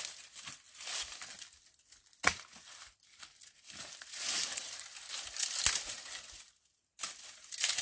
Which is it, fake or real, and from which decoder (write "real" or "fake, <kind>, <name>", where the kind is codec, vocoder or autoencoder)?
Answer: real